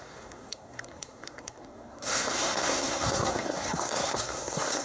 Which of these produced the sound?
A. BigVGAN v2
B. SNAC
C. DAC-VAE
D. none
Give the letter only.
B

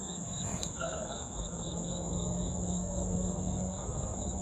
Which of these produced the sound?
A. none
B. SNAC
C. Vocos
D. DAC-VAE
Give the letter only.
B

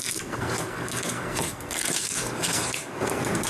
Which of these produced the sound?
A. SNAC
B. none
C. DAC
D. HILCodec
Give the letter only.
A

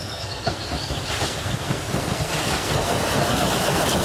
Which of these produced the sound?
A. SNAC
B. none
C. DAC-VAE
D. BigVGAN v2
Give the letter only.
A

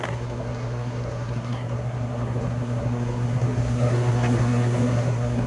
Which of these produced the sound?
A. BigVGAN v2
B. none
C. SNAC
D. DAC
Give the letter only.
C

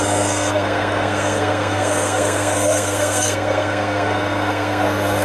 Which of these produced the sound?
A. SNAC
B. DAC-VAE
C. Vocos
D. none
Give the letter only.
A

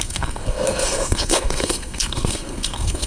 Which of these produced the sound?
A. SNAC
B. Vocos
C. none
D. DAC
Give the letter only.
A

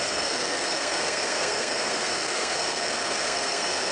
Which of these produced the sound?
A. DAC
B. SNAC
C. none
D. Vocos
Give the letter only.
B